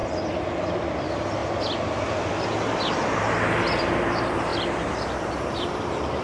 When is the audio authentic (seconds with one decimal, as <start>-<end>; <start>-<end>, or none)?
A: 0.0-0.6; 1.4-3.2